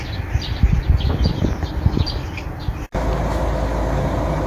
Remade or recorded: recorded